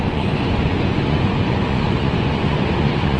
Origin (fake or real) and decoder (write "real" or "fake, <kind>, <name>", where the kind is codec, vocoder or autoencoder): fake, vocoder, Vocos